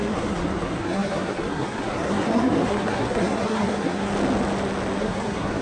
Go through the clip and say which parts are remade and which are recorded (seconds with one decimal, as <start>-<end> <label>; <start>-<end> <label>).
0.0-4.1 remade; 4.1-5.0 recorded; 5.0-5.6 remade